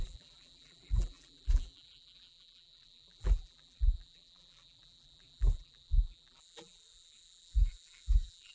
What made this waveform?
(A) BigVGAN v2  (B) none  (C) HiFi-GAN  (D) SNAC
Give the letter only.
A